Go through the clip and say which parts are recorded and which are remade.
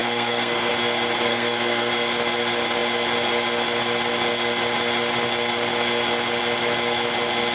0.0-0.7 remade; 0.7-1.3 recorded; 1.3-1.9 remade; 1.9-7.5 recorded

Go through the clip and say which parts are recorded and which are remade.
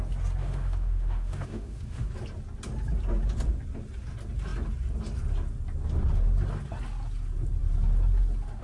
0.0-0.4 recorded; 0.4-2.1 remade; 2.1-8.6 recorded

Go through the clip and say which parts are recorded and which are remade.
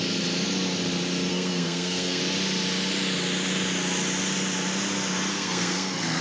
0.0-1.3 recorded; 1.3-2.2 remade; 2.2-5.3 recorded; 5.3-6.2 remade